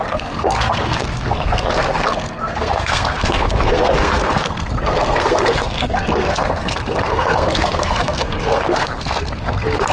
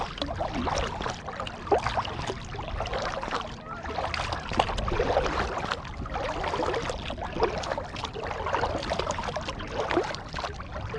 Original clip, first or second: second